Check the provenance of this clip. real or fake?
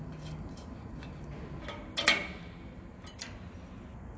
real